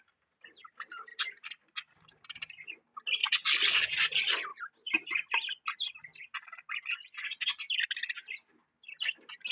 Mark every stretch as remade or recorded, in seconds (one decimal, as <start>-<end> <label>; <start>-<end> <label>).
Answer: 0.0-9.5 recorded